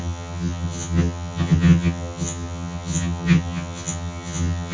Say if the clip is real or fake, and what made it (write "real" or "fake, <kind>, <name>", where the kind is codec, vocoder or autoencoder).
fake, vocoder, HiFi-GAN